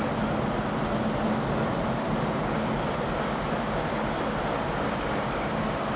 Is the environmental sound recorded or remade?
recorded